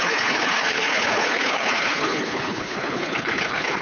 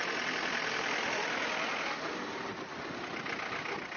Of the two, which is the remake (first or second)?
first